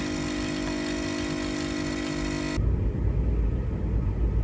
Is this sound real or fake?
real